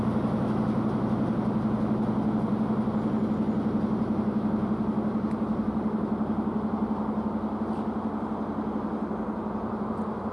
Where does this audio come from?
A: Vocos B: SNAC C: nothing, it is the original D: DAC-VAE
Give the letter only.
C